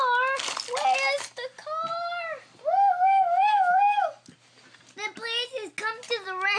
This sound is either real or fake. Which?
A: real